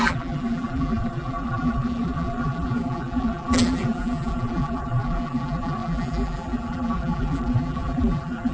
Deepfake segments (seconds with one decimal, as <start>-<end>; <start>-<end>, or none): 0.0-8.5